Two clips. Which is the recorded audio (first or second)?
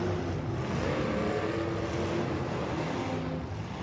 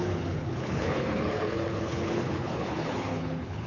first